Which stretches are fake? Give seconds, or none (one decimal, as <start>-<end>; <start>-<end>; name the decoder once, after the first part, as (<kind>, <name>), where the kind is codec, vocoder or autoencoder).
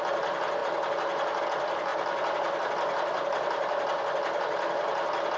none